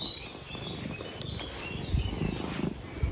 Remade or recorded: recorded